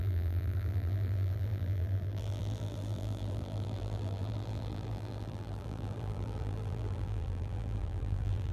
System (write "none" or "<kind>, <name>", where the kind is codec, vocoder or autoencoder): vocoder, BigVGAN v2